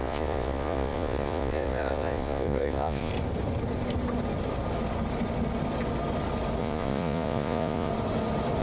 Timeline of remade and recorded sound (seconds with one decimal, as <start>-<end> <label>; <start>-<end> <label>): 0.0-3.1 remade; 3.1-6.6 recorded; 6.6-7.9 remade; 7.9-8.6 recorded